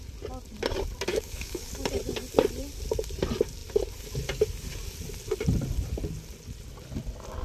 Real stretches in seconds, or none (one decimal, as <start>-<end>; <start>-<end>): 0.0-1.1; 1.7-7.4